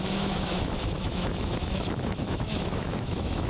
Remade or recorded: remade